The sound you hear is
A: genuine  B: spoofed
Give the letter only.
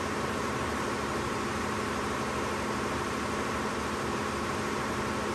A